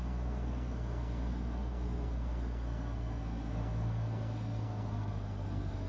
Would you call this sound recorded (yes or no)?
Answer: no